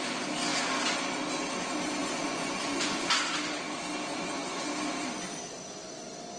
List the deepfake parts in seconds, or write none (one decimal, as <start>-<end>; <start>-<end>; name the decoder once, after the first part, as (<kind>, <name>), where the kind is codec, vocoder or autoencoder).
2.0-3.1 (vocoder, Vocos); 4.1-4.7